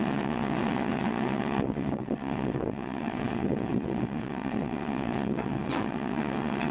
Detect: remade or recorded remade